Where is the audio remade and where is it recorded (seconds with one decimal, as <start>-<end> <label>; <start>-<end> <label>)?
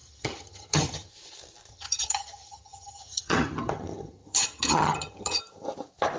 0.0-1.1 remade; 1.1-1.7 recorded; 1.7-5.4 remade; 5.4-6.2 recorded